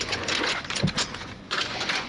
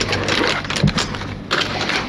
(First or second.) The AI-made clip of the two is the first